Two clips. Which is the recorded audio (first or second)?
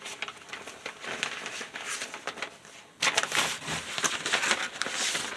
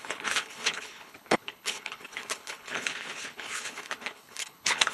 first